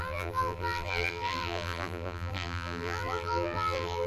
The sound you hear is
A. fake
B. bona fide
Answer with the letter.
A